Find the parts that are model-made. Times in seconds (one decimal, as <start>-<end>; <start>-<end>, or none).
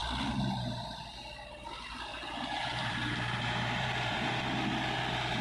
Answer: 2.1-4.4